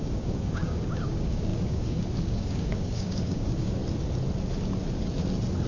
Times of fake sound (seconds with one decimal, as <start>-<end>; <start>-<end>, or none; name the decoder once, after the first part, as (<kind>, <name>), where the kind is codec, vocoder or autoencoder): 0.0-3.8 (codec, DAC)